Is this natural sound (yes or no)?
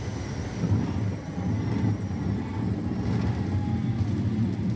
yes